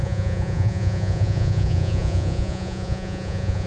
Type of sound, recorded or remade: remade